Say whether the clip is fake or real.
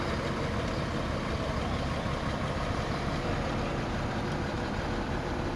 fake